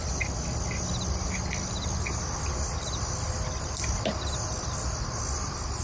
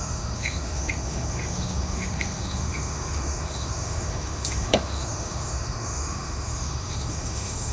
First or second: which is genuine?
first